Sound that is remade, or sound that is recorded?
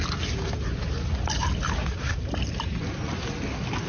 recorded